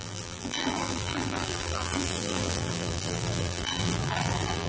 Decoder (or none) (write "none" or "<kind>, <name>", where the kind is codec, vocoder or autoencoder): vocoder, BigVGAN v2